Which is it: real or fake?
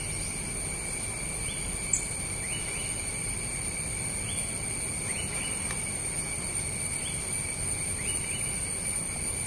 real